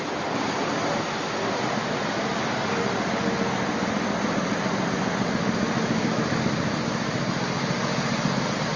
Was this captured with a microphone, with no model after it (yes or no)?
yes